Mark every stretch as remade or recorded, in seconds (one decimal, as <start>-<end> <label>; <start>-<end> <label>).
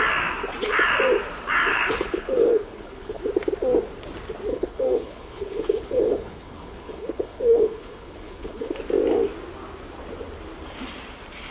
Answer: 0.0-1.7 recorded; 1.7-3.2 remade; 3.2-4.5 recorded; 4.5-8.8 remade; 8.8-11.5 recorded